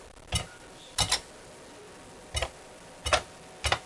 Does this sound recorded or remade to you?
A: recorded